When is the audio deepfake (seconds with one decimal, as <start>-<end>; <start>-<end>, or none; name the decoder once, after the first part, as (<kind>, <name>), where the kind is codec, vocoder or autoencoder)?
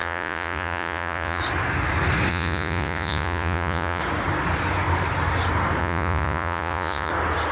0.0-1.4 (vocoder, Vocos); 2.3-4.0; 5.8-7.1